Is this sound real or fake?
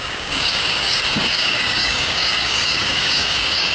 fake